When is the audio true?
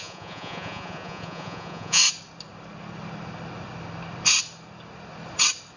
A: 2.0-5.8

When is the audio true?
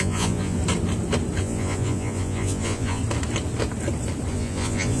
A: 0.6-1.4; 3.0-4.3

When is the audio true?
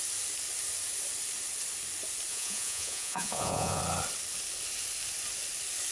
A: 0.0-2.3; 3.8-5.9